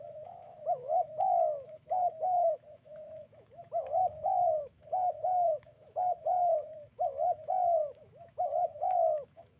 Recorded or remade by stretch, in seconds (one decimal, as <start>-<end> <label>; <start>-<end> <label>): 0.0-9.6 remade